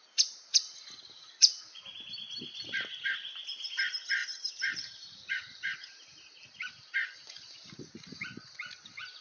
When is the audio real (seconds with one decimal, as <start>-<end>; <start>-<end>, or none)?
0.0-4.2; 6.7-9.2